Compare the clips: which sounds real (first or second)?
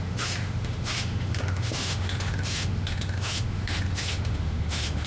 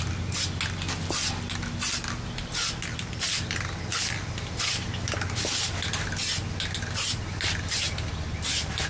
second